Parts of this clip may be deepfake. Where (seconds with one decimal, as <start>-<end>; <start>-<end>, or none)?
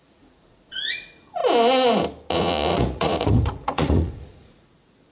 0.0-1.4; 2.3-5.1